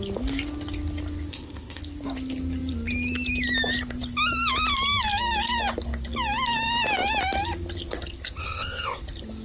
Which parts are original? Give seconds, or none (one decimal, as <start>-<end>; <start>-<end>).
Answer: 0.0-1.3; 1.8-8.4; 9.0-9.4

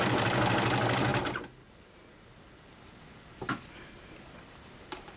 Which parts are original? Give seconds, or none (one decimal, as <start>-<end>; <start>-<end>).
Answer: 0.0-5.2

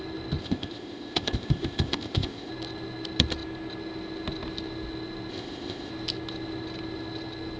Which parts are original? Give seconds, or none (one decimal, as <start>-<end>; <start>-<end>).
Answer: 0.0-0.4; 2.5-5.3; 5.9-7.6

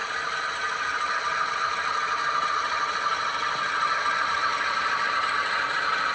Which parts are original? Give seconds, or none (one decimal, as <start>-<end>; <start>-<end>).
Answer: 0.0-6.1

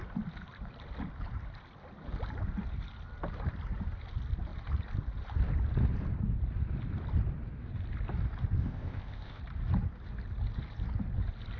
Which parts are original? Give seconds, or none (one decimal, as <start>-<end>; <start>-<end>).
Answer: 0.0-8.6; 9.4-11.6

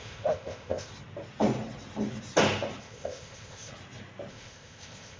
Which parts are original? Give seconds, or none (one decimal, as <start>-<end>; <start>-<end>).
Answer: 0.9-2.8; 3.7-4.3